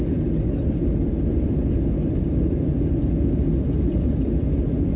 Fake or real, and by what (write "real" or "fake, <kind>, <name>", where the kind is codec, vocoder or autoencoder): real